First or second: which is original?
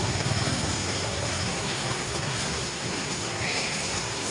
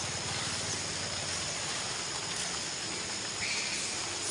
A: second